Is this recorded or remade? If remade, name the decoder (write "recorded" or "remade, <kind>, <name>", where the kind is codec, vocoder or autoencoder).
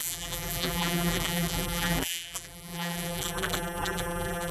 remade, vocoder, BigVGAN v2